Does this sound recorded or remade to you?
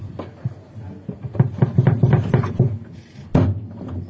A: recorded